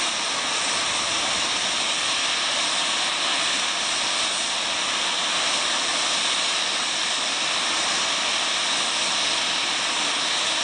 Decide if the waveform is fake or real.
real